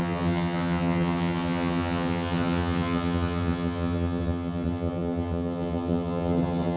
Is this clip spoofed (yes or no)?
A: yes